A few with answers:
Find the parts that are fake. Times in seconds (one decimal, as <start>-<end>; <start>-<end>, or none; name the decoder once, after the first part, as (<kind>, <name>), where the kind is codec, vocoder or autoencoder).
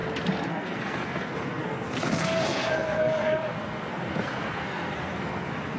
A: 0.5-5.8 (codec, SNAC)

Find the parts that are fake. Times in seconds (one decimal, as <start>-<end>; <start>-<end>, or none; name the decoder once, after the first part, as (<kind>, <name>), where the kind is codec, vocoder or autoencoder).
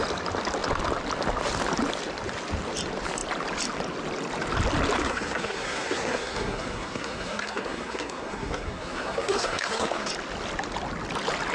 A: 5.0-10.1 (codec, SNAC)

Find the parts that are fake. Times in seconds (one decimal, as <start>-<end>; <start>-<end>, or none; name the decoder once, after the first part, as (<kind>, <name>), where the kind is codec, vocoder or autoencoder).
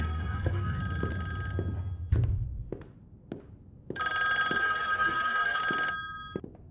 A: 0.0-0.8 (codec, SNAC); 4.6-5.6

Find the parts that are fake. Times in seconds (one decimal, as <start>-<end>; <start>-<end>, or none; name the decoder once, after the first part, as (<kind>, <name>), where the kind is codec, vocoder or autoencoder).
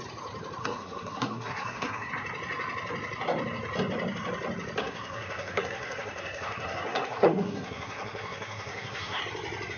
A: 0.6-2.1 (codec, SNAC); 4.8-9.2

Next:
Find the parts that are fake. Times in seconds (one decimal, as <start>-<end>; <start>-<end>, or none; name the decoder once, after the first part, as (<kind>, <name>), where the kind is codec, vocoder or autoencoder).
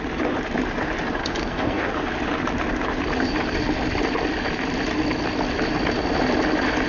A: 1.2-1.9 (codec, SNAC)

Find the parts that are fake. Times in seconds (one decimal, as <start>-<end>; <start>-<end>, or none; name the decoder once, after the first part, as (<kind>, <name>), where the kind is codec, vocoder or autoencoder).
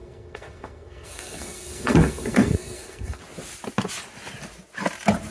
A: 0.0-3.2 (codec, SNAC)